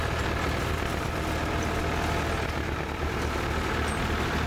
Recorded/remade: recorded